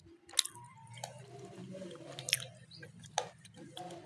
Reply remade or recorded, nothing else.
recorded